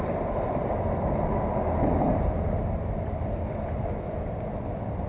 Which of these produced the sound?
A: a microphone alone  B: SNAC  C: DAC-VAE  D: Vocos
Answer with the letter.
A